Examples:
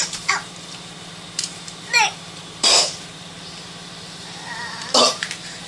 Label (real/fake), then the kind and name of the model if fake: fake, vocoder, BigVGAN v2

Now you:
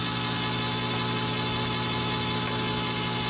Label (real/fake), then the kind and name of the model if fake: real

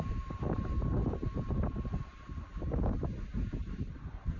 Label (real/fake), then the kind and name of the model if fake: fake, vocoder, BigVGAN v2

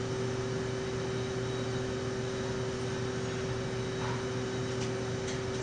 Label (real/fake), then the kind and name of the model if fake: real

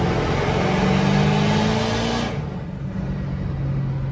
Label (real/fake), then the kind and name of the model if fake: real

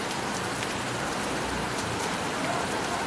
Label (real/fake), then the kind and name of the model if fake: fake, vocoder, BigVGAN v2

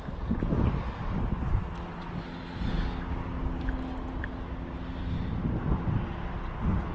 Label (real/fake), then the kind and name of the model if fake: real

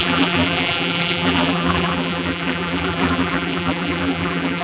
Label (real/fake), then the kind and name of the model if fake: fake, vocoder, BigVGAN v2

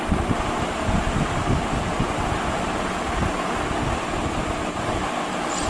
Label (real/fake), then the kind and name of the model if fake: real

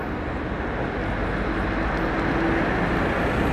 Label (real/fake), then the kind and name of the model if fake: real